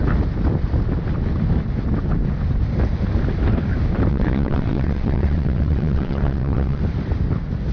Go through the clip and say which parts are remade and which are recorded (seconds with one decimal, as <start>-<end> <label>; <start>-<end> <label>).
0.0-4.1 recorded; 4.1-6.8 remade; 6.8-7.7 recorded